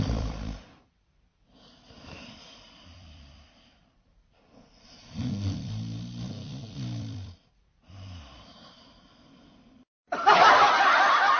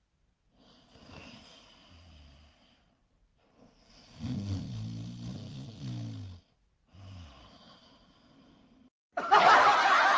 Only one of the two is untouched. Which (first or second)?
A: second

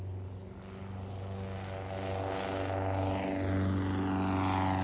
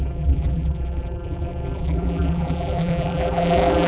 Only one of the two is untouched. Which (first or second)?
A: first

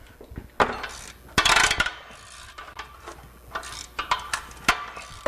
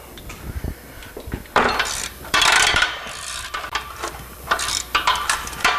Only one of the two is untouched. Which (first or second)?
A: first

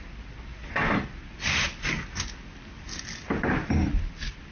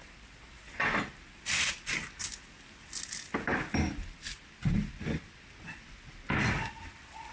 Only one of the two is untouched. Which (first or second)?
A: second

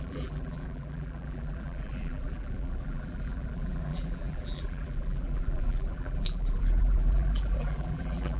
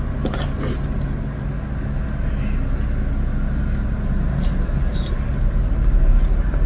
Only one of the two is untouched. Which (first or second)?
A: second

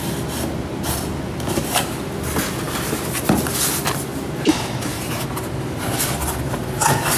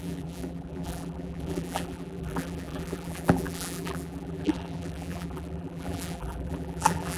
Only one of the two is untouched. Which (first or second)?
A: first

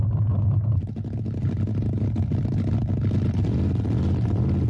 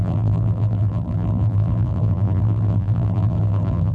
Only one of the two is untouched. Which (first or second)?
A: first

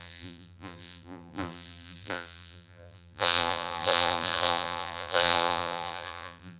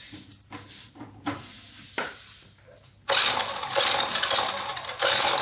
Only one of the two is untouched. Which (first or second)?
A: second